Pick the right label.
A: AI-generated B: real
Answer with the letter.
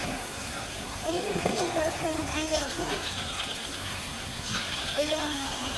A